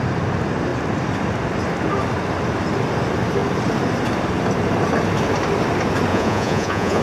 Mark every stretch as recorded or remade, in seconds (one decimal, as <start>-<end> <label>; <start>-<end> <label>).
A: 0.0-6.1 recorded; 6.1-7.0 remade